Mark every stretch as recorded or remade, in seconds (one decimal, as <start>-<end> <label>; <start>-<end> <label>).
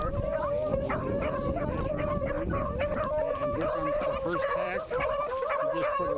0.0-0.7 recorded; 0.7-1.2 remade; 1.2-2.9 recorded; 2.9-5.2 remade; 5.2-6.2 recorded